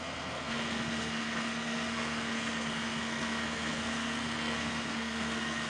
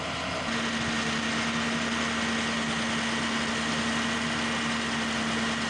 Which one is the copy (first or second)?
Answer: first